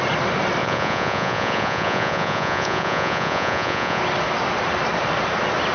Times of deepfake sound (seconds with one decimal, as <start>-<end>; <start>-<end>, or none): 0.6-4.0